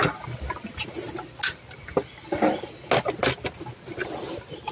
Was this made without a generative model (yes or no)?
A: yes